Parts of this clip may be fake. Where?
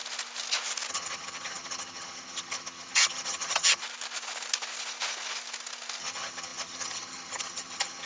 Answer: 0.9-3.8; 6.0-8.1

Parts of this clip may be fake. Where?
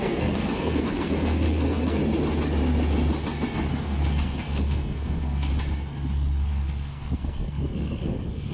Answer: 0.0-2.0; 3.7-5.5; 6.5-8.5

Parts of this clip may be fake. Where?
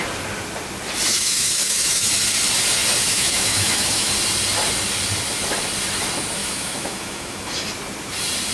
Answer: 1.1-2.1; 3.1-4.1; 6.4-7.5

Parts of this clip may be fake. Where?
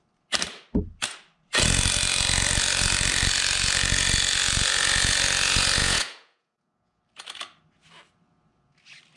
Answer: 5.8-7.0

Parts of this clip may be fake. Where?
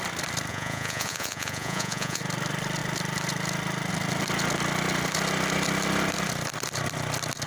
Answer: 0.5-2.2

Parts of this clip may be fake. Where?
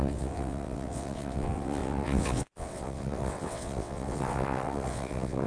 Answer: 0.0-5.5